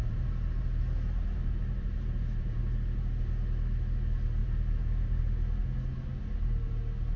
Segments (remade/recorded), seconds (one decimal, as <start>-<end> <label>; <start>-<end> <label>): 0.0-2.6 remade; 2.6-4.4 recorded; 4.4-5.2 remade; 5.2-7.2 recorded

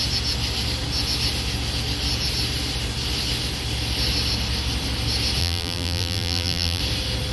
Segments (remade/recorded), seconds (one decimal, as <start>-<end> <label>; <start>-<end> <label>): 0.0-5.4 recorded; 5.4-6.8 remade; 6.8-7.3 recorded